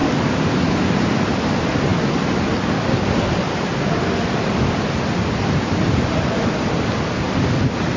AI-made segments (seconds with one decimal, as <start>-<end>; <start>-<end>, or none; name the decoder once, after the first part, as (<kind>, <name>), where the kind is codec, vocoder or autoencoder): none

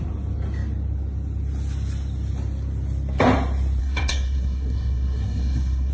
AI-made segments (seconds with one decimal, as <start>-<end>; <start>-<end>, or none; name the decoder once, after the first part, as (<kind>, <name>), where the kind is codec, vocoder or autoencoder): 3.8-5.9 (codec, SNAC)

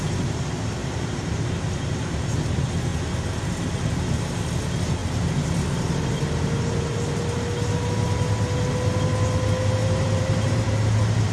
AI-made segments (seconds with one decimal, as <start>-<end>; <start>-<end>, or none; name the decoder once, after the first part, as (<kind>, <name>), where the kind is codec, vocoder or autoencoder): 0.8-1.7 (vocoder, BigVGAN v2); 9.8-10.7

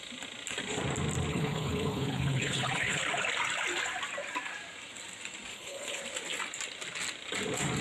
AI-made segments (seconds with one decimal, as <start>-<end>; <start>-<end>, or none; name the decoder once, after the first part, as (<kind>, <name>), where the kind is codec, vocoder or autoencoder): 1.3-3.0 (codec, HILCodec); 5.5-6.0

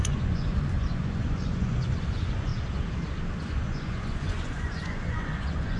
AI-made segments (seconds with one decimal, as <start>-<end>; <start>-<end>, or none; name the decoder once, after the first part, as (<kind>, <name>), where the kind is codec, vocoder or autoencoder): 0.0-2.5 (vocoder, Vocos); 3.4-5.8

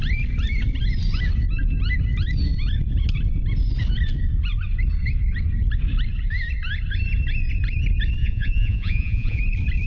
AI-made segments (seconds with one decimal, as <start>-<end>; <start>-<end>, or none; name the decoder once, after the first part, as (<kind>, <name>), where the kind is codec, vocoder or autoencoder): 8.2-9.4 (vocoder, Vocos)

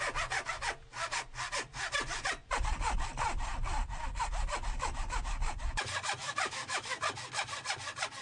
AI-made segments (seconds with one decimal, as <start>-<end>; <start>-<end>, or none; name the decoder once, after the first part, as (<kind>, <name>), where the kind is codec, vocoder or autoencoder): 6.2-7.0 (autoencoder, DAC-VAE)

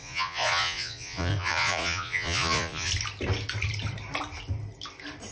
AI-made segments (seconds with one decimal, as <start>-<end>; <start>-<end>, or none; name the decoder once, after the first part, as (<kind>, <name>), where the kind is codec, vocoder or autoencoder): 0.0-2.9 (vocoder, Vocos)